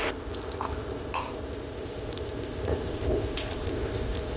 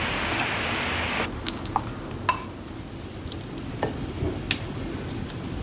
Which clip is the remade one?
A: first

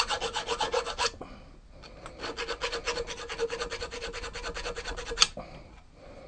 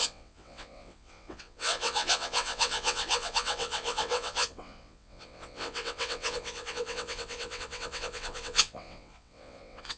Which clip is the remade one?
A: second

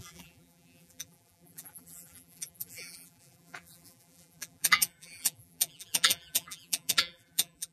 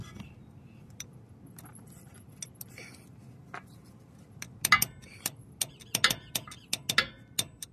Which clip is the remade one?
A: first